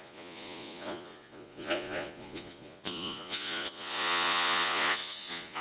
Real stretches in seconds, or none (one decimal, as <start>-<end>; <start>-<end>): none